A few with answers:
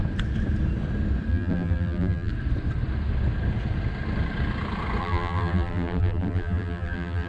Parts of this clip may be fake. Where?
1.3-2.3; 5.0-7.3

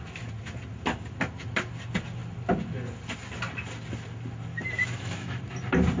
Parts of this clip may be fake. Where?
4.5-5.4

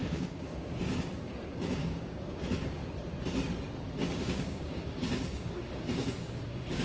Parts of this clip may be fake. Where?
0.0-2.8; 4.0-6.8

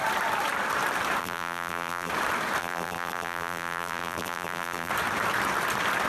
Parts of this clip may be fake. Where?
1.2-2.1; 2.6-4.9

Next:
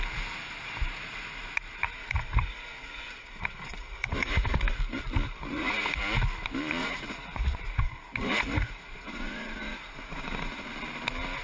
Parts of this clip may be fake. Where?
2.0-4.8; 5.5-6.0; 6.8-10.7

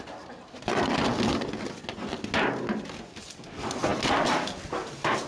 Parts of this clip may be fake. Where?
none

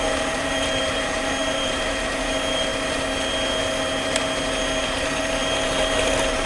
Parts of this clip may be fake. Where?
0.0-2.7; 4.8-6.5